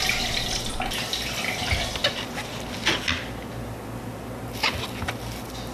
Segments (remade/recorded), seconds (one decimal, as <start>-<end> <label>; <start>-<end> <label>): 0.0-5.7 recorded